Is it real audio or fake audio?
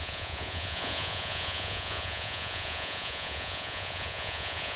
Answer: fake